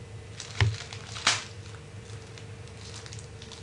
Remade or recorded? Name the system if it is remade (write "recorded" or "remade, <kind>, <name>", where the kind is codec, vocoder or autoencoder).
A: recorded